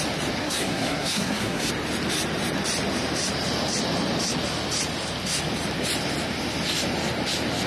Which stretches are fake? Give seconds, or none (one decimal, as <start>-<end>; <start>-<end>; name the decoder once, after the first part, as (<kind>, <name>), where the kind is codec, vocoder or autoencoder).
0.4-1.7 (codec, SNAC)